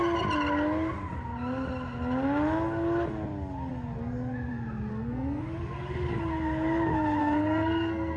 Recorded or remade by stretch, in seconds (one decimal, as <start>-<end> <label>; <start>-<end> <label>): 0.0-4.9 recorded; 4.9-5.4 remade; 5.4-7.2 recorded; 7.2-8.2 remade